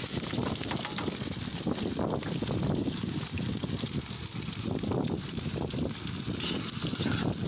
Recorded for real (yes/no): no